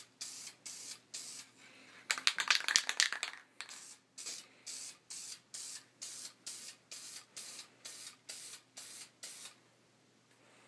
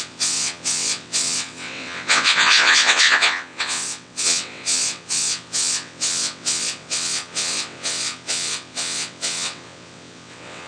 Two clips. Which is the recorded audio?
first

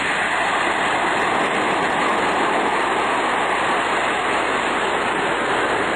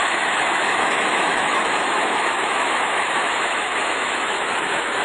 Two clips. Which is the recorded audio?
first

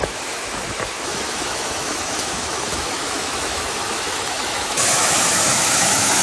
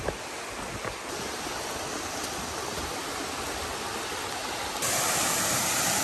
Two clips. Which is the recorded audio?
second